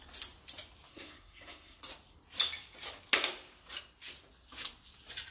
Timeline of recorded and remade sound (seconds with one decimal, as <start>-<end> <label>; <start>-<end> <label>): 0.0-0.9 recorded; 0.9-1.8 remade; 1.8-5.3 recorded